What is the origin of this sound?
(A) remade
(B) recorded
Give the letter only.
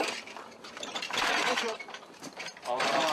A